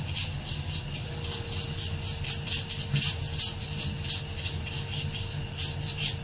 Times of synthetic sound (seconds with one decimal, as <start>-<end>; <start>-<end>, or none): none